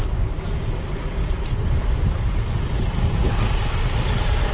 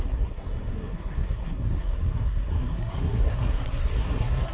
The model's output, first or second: second